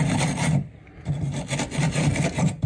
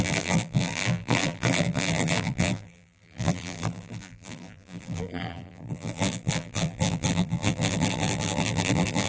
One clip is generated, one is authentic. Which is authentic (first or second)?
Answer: first